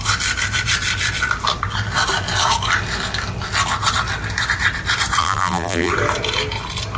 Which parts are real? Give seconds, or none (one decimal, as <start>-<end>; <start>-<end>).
0.0-5.2; 5.9-7.0